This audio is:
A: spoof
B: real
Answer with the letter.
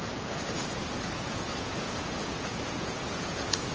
A